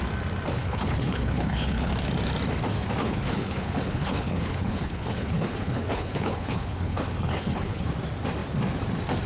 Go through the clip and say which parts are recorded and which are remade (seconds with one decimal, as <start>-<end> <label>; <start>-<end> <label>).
0.0-0.6 recorded; 0.6-1.9 remade; 1.9-3.0 recorded; 3.0-7.9 remade; 7.9-9.3 recorded

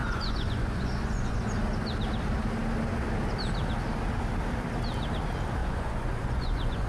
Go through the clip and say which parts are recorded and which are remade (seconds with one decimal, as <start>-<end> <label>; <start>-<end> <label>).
0.0-1.5 remade; 1.5-5.6 recorded; 5.6-6.9 remade

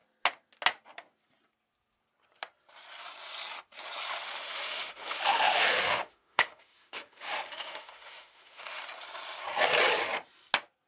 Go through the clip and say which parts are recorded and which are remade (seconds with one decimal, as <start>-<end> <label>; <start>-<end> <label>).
0.0-4.2 recorded; 4.2-8.8 remade; 8.8-10.9 recorded